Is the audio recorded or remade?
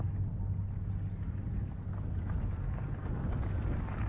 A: recorded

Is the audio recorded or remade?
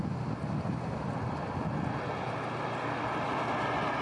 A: recorded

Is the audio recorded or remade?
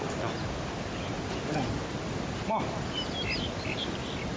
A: recorded